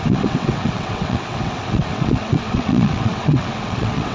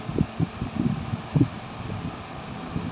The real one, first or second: second